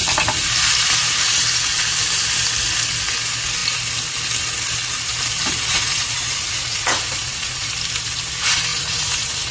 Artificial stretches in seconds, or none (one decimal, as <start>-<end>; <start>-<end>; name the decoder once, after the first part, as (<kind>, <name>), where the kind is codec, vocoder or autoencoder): 5.7-7.7 (vocoder, Vocos); 8.7-9.5